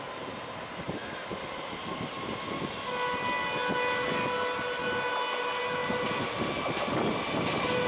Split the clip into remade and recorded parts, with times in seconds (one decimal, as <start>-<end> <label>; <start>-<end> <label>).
0.0-7.9 recorded